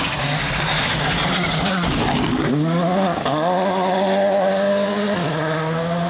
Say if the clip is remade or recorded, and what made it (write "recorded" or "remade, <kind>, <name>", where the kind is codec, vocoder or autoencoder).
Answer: recorded